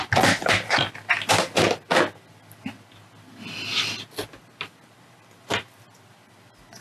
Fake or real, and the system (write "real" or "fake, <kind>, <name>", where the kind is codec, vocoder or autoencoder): real